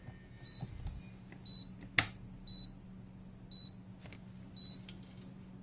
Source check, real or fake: real